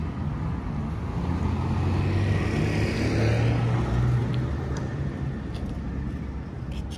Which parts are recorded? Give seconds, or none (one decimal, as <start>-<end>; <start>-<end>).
0.0-4.2; 5.3-7.0